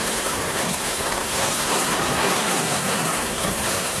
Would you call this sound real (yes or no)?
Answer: no